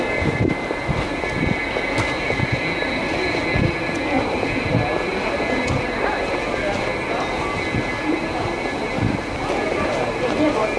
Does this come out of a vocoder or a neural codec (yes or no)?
no